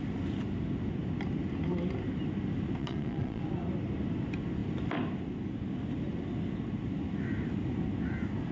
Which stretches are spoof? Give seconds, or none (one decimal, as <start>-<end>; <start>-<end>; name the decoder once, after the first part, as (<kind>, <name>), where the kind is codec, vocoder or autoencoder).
2.8-3.4 (vocoder, Vocos)